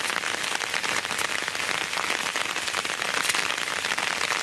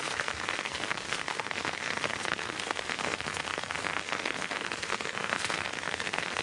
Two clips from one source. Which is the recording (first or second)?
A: first